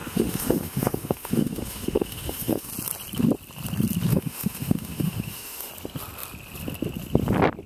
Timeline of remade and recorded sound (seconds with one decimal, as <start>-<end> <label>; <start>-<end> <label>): 0.0-2.7 remade; 2.7-4.1 recorded; 4.1-5.7 remade; 5.7-7.7 recorded